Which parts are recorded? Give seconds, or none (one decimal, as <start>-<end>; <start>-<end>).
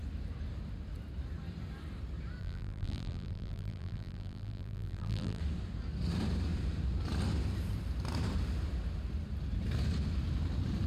0.0-2.4; 5.4-10.9